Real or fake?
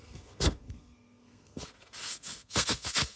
fake